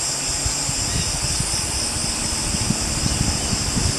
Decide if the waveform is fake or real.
real